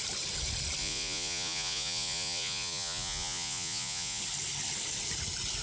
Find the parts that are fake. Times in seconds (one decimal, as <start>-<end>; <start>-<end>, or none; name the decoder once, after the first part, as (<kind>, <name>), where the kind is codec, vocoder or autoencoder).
0.8-4.2 (vocoder, Vocos)